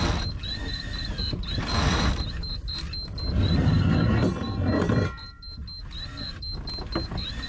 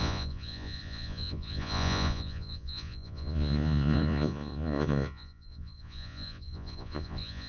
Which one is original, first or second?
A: first